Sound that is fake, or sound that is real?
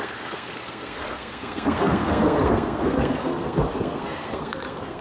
fake